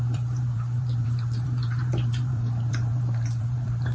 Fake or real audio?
fake